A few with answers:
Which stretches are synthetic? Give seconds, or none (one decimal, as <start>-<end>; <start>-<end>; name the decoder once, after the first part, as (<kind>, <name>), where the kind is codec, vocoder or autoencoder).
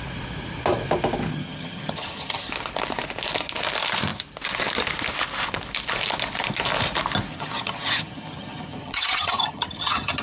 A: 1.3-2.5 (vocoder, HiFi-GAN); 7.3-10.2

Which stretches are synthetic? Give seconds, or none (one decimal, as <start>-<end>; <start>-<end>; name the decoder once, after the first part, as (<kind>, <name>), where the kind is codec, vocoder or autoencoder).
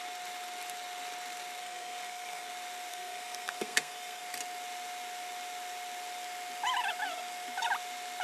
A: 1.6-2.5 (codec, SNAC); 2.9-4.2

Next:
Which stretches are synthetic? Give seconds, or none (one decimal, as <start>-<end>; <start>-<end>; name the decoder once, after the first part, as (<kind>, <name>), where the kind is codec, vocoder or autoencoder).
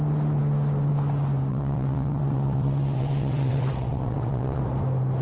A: 1.5-4.6 (vocoder, WaveNeXt)